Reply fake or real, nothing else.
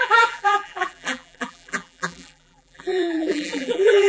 fake